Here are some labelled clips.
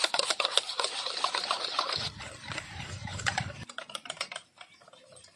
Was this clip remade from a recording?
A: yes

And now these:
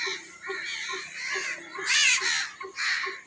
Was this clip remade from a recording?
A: no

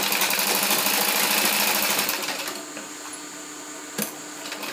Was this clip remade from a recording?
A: no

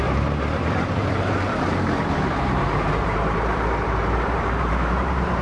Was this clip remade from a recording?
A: yes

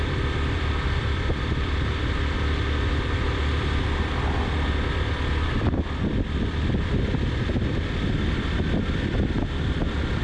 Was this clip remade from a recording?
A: yes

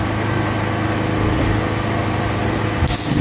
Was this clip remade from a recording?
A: no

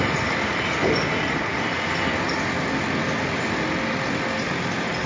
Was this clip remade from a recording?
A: no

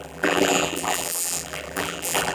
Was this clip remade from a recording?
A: yes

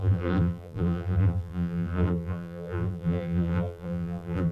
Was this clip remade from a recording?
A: yes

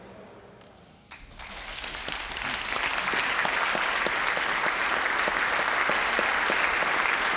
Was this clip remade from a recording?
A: no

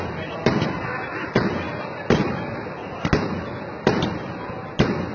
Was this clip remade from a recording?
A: no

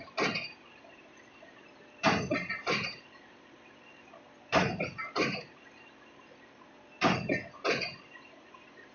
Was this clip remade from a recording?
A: yes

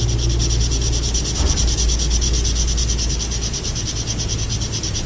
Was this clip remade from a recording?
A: no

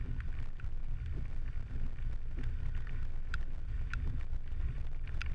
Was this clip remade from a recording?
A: no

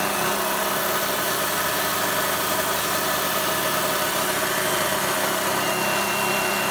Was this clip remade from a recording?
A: no